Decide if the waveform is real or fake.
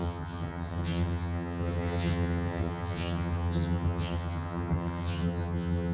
fake